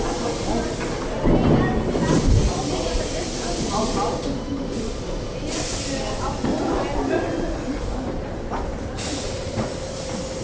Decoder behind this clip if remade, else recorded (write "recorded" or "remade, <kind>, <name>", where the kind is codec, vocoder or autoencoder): recorded